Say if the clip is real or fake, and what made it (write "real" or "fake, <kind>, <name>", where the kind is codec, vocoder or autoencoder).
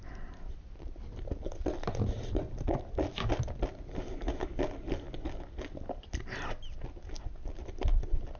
real